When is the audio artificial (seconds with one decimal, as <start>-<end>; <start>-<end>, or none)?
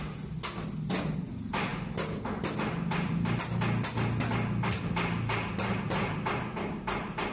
none